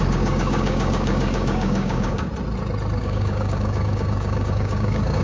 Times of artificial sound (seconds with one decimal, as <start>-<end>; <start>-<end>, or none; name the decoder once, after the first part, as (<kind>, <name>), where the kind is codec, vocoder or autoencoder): 0.0-2.3 (codec, DAC); 3.0-5.2